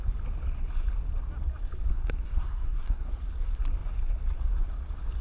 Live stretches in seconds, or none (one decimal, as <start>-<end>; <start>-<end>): 0.0-1.9; 3.1-5.2